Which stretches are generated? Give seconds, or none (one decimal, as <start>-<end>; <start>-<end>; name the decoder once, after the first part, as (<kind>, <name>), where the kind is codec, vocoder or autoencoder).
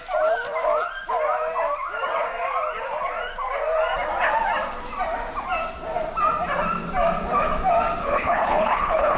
8.0-9.2 (codec, HILCodec)